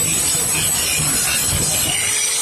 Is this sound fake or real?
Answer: real